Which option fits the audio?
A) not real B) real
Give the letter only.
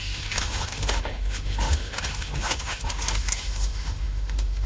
A